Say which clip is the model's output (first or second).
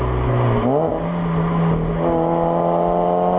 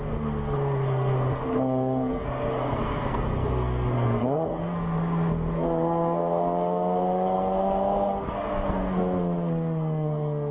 second